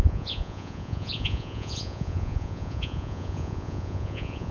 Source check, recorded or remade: remade